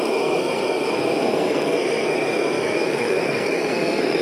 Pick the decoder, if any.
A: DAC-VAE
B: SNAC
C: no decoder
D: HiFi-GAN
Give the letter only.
B